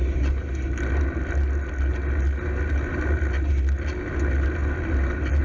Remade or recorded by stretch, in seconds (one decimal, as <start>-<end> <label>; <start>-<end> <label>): 0.0-5.4 recorded